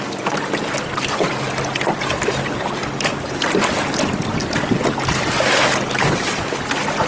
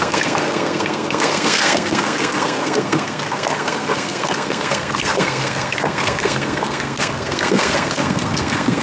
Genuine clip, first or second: first